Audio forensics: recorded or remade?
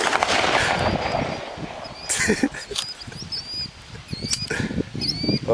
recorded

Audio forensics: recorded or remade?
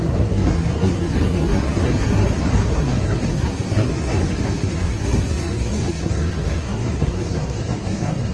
remade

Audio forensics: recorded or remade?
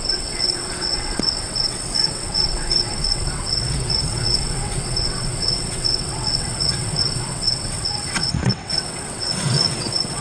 remade